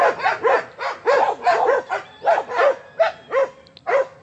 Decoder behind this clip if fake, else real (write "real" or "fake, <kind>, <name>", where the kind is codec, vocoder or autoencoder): real